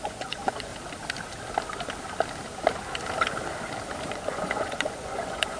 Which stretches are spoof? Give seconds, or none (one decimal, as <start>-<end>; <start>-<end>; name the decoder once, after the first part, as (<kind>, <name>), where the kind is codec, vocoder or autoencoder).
0.0-0.7 (vocoder, Vocos); 4.1-5.6